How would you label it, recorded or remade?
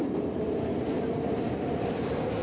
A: recorded